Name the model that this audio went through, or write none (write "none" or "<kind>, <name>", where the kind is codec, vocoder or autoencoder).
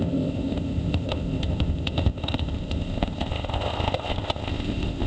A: codec, ZipCodec